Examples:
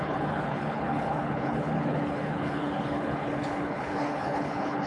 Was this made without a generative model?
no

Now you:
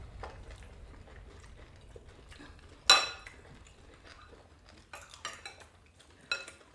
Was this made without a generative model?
yes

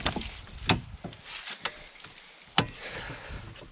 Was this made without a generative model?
yes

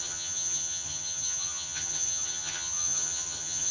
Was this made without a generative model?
no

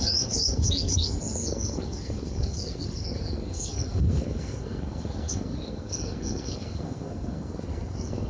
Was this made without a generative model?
no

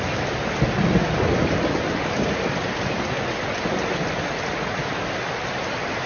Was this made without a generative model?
yes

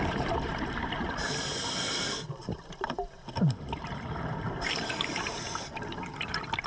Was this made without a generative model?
no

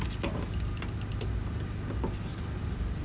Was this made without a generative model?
yes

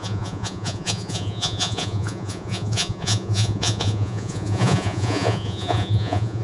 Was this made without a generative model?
no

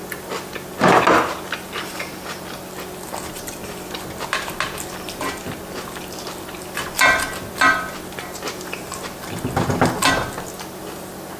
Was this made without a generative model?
yes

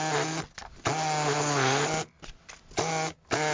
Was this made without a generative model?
yes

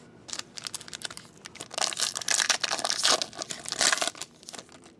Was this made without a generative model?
yes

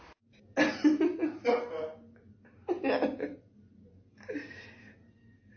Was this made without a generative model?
yes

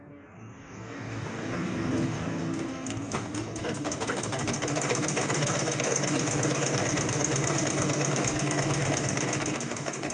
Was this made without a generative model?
no